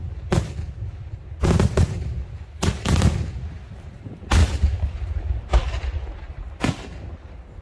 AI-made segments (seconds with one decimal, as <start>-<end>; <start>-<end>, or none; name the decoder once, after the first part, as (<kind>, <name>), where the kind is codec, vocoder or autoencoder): none